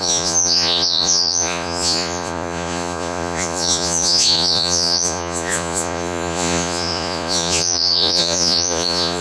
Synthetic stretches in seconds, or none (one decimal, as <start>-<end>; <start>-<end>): 0.0-9.2